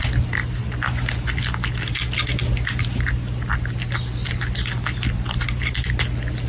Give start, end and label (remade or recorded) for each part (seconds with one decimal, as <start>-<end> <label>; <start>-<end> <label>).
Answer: 0.0-6.5 recorded